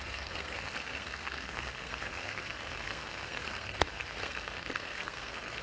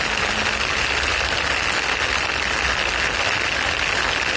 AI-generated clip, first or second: first